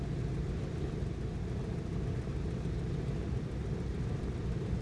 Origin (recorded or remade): recorded